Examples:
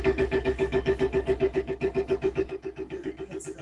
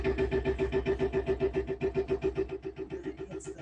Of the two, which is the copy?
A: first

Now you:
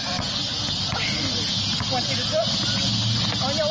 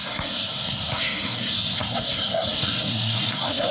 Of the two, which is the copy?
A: second